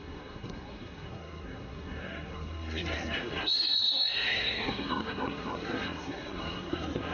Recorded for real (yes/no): no